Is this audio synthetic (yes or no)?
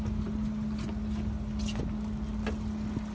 no